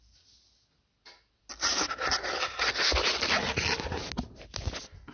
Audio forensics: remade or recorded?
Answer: recorded